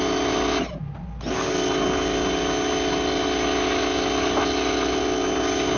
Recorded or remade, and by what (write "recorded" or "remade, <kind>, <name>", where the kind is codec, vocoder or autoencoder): recorded